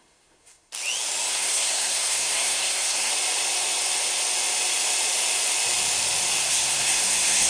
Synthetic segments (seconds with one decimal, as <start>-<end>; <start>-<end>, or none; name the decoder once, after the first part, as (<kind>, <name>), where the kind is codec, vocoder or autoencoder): 0.0-0.7 (codec, SNAC); 1.3-3.1; 6.4-7.5